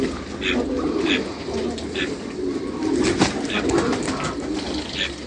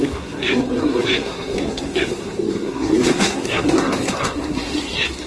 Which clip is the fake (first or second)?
second